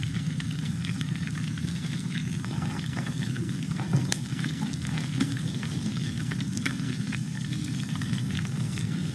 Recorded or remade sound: remade